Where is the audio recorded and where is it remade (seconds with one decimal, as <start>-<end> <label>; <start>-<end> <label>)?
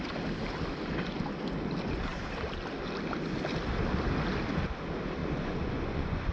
0.0-5.2 recorded; 5.2-6.3 remade